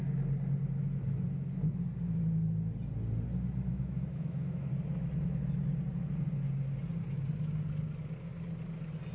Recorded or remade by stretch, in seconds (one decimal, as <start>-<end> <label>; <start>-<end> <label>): 0.0-3.7 recorded; 3.7-4.7 remade; 4.7-9.1 recorded